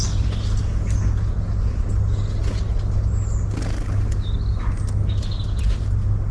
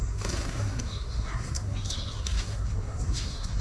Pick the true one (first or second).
first